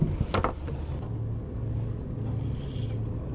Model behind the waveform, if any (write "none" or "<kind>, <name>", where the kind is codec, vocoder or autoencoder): none